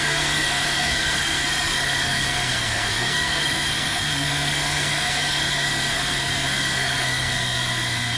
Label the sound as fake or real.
fake